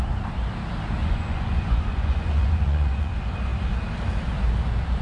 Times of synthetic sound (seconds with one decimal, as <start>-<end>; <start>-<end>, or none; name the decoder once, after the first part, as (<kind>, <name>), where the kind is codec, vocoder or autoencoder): 1.0-3.1 (vocoder, Vocos)